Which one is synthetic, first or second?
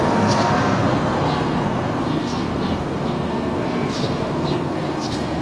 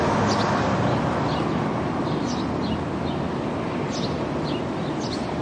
first